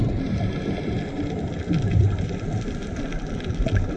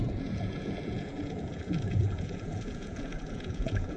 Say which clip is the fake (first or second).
second